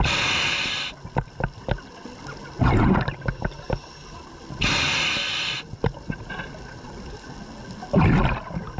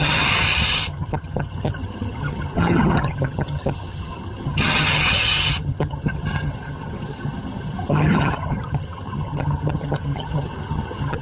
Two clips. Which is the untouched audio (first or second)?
first